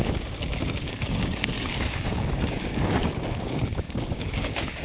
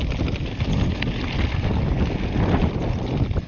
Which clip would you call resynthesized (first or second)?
first